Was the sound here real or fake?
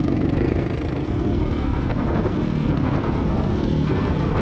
fake